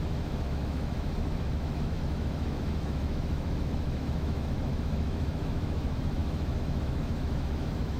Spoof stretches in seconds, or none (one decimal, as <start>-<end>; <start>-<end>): 0.0-8.0